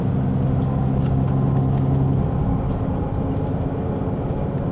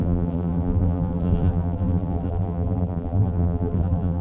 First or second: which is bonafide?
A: first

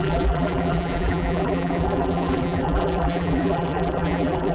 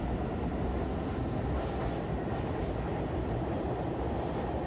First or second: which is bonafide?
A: second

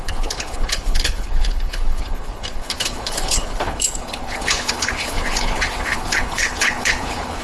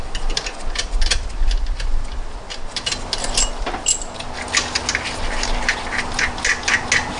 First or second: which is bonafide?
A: second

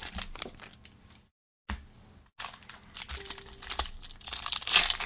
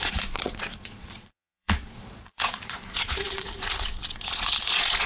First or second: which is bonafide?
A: first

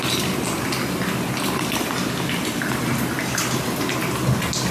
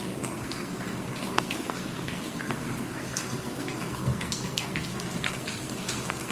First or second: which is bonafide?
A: first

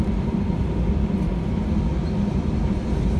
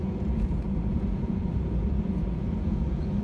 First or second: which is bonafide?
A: first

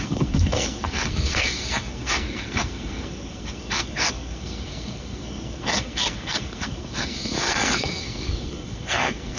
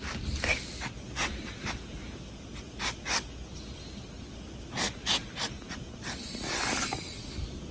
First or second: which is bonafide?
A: second